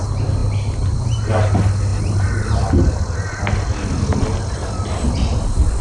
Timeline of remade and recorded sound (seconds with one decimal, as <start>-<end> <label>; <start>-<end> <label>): 0.0-5.8 recorded